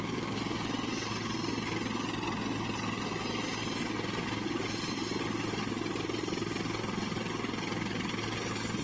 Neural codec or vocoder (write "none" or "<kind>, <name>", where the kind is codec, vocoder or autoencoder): none